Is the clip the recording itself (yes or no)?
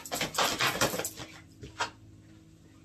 yes